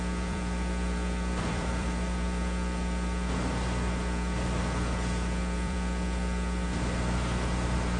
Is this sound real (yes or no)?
no